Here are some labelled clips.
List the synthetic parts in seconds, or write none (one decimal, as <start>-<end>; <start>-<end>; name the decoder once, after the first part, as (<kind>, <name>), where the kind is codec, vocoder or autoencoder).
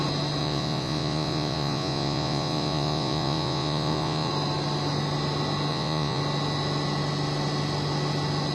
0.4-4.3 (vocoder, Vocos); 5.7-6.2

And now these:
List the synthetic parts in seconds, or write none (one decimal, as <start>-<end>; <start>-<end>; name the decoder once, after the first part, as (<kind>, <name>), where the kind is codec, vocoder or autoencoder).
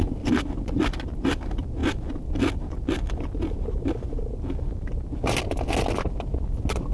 none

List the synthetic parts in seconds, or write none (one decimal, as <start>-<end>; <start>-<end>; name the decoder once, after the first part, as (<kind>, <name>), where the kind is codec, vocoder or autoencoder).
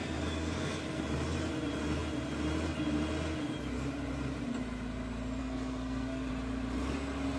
0.0-1.0 (codec, SNAC); 5.4-6.3